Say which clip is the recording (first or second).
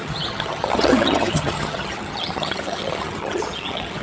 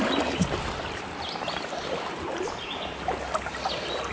second